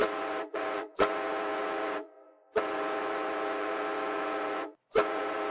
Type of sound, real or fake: fake